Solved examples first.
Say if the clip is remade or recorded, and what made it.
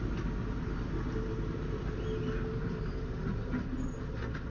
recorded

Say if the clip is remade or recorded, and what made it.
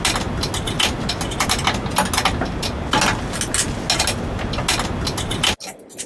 recorded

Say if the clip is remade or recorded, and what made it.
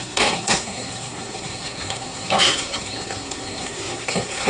remade, codec, SNAC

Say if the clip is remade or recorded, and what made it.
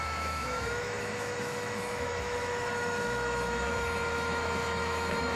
remade, autoencoder, DAC-VAE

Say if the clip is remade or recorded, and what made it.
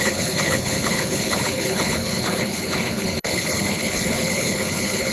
remade, codec, HILCodec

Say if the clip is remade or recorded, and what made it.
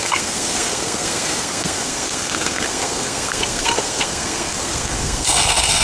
remade, codec, SNAC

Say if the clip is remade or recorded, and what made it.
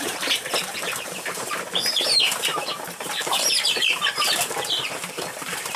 remade, vocoder, BigVGAN v2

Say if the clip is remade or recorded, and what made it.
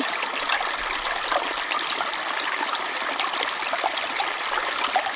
recorded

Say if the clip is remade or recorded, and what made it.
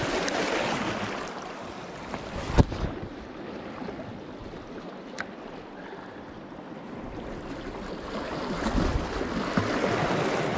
recorded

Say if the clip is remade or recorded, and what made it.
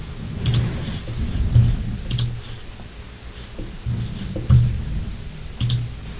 recorded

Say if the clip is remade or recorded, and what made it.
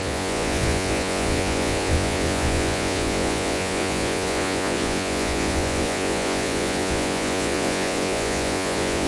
remade, vocoder, Vocos